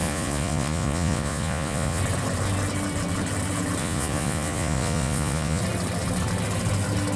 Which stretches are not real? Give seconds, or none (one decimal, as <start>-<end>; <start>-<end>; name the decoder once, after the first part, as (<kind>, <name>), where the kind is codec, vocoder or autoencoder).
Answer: 0.0-2.0 (vocoder, Vocos); 3.8-5.6